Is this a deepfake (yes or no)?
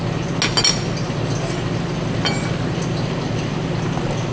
no